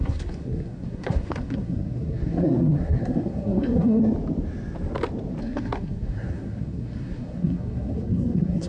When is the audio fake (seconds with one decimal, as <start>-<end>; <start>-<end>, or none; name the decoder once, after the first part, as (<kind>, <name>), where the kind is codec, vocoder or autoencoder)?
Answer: 0.0-4.0 (codec, SNAC); 5.4-8.7